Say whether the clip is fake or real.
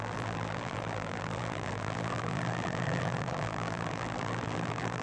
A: fake